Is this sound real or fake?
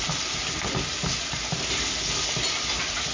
real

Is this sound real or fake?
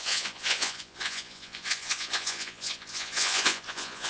fake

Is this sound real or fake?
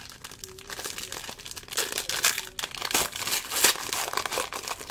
real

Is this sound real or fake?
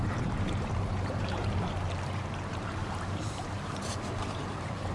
fake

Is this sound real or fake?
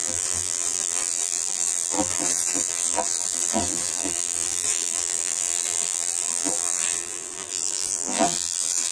fake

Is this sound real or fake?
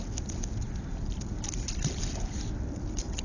real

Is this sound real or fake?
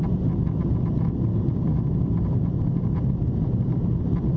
real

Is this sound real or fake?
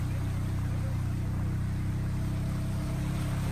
real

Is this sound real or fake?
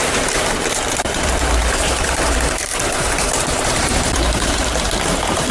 fake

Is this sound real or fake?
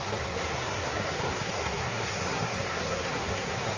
fake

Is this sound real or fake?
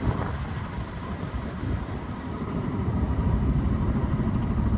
fake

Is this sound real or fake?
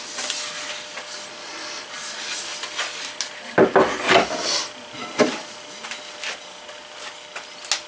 real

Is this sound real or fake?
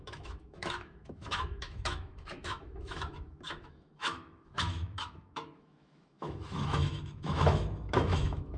fake